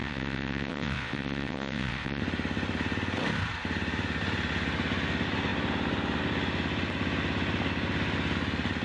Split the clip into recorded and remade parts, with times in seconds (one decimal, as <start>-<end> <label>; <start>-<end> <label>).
0.0-2.2 remade; 2.2-8.8 recorded